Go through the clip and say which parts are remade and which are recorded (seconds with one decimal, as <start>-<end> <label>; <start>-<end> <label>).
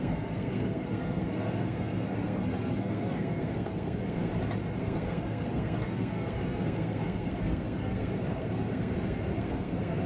0.0-4.3 remade; 4.3-4.8 recorded; 4.8-10.1 remade